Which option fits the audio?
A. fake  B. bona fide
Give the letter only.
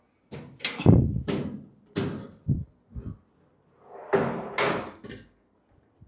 B